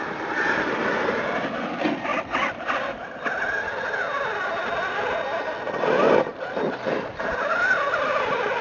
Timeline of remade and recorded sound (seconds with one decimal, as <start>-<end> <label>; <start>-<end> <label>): 0.0-8.6 recorded